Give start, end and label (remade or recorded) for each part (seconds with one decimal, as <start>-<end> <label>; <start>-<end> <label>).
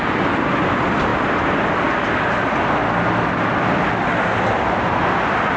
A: 0.0-5.6 recorded